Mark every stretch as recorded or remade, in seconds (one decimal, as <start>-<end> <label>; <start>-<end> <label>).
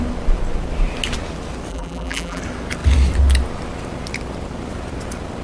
0.0-1.7 recorded; 1.7-2.4 remade; 2.4-5.4 recorded